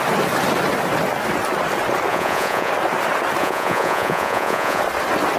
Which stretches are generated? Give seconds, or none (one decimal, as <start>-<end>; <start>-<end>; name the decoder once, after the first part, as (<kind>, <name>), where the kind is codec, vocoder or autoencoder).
2.1-2.7 (vocoder, Vocos); 3.4-4.8